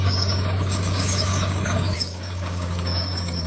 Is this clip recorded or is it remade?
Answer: remade